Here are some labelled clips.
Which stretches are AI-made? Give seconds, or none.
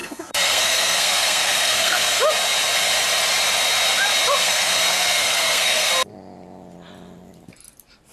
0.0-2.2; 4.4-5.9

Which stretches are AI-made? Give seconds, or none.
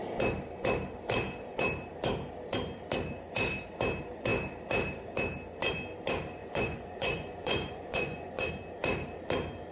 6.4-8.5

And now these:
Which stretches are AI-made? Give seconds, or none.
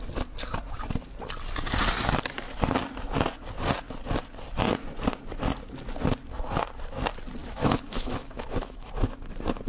7.4-8.9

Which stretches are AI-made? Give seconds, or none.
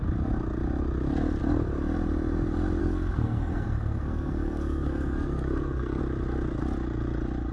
2.8-6.0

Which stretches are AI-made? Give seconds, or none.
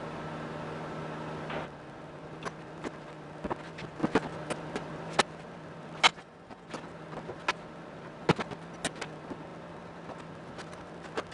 6.1-6.7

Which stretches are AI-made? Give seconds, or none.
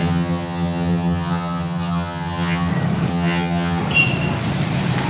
0.0-2.7; 3.1-3.8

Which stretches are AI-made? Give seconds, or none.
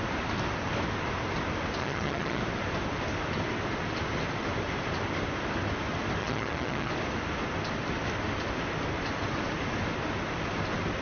1.8-2.4; 6.2-6.9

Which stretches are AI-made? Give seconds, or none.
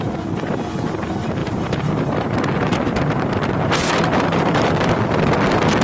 1.4-4.9